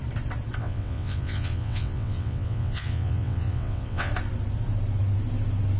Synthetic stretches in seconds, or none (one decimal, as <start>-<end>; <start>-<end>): 0.6-4.1